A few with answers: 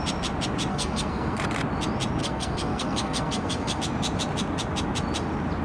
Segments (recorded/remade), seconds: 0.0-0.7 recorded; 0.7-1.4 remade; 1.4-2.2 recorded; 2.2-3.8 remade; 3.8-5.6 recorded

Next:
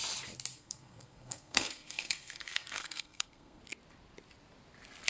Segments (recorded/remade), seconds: 0.0-0.5 recorded; 0.5-3.6 remade; 3.6-5.1 recorded

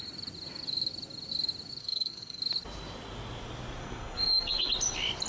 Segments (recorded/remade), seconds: 0.0-1.8 recorded; 1.8-2.4 remade; 2.4-3.8 recorded; 3.8-4.7 remade; 4.7-5.3 recorded

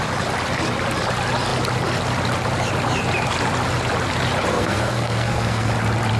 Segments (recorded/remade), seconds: 0.0-4.5 recorded; 4.5-5.7 remade; 5.7-6.2 recorded

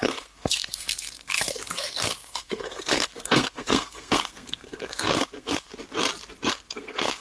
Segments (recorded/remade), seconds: 0.0-5.7 remade; 5.7-6.5 recorded; 6.5-7.2 remade

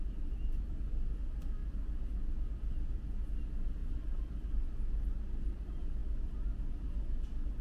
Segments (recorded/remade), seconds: 0.0-7.6 recorded

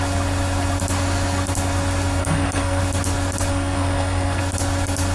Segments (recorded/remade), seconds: 0.0-2.2 recorded; 2.2-2.8 remade; 2.8-3.5 recorded; 3.5-4.4 remade; 4.4-5.1 recorded

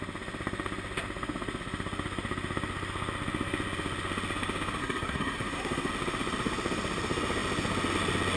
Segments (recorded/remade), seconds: 0.0-4.8 recorded; 4.8-5.9 remade; 5.9-8.4 recorded